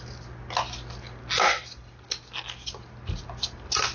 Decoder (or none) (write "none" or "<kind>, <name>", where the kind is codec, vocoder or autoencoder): none